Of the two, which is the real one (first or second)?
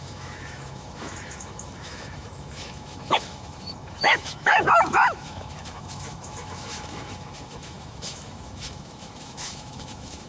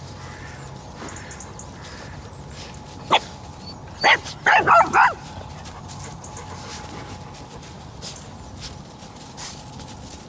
second